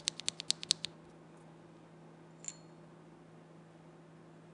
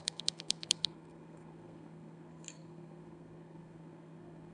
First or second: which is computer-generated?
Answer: second